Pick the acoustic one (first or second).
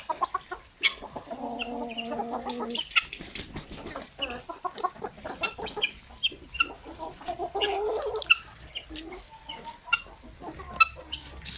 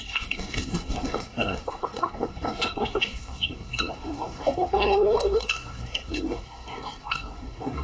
first